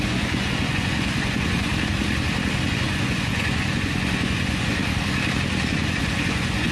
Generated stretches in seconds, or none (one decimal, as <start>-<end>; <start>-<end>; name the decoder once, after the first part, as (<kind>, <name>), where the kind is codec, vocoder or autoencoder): 0.0-1.7 (vocoder, Vocos); 2.7-4.8; 5.7-6.7